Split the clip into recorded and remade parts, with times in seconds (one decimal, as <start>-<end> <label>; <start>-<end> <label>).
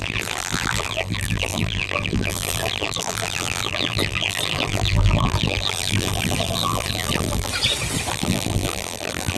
0.0-7.5 remade; 7.5-8.1 recorded; 8.1-9.4 remade